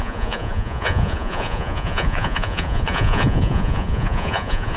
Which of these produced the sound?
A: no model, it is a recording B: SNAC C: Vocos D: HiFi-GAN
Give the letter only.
C